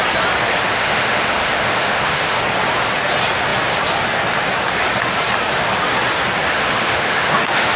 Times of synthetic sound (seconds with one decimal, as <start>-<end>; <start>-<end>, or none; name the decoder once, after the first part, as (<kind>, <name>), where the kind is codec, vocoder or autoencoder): 0.7-2.4 (autoencoder, DAC-VAE); 6.5-7.8